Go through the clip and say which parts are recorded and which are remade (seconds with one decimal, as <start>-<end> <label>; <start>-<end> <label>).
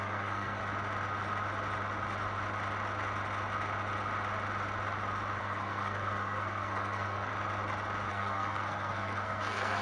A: 0.0-0.6 remade; 0.6-5.4 recorded; 5.4-7.3 remade; 7.3-8.1 recorded; 8.1-9.8 remade